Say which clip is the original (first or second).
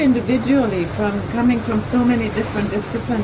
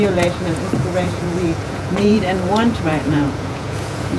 first